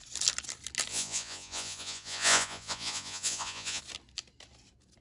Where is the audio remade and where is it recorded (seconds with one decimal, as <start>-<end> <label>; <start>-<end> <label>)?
0.0-0.9 recorded; 0.9-3.8 remade; 3.8-5.0 recorded